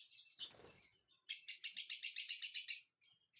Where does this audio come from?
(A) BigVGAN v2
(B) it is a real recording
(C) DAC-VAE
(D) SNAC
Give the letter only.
A